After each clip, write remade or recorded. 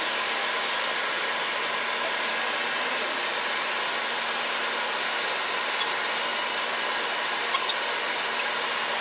recorded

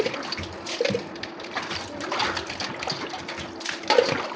recorded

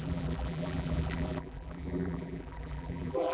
remade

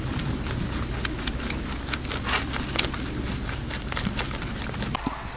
recorded